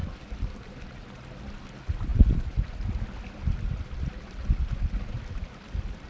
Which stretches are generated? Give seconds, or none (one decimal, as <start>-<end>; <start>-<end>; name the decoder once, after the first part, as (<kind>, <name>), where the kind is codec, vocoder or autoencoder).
none